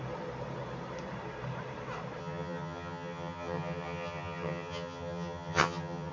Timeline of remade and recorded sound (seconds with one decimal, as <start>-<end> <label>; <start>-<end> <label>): 0.0-2.2 recorded; 2.2-6.1 remade